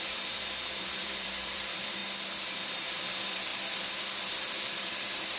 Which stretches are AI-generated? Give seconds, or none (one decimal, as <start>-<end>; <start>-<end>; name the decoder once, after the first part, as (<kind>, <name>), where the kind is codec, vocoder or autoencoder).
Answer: 0.0-2.0 (vocoder, BigVGAN v2); 2.7-3.5; 4.2-5.4